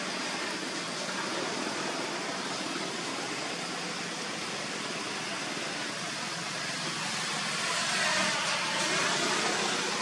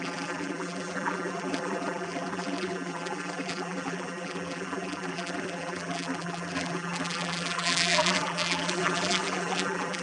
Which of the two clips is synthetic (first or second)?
second